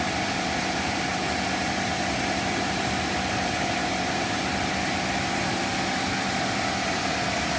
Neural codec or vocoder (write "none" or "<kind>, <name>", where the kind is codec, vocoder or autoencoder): vocoder, BigVGAN v2